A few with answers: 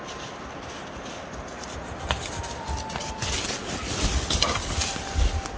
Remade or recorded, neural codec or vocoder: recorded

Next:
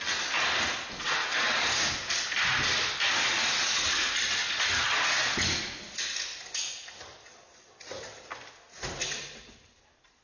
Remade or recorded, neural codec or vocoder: recorded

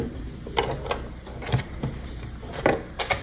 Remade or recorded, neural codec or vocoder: recorded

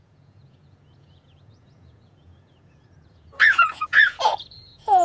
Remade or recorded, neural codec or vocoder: remade, vocoder, Vocos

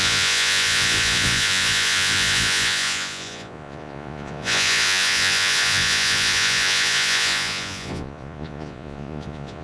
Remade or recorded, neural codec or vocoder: remade, vocoder, Vocos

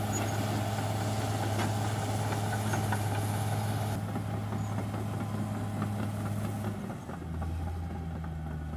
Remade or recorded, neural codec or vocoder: recorded